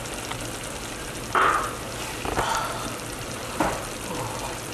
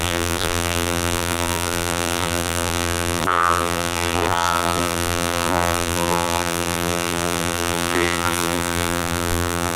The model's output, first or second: second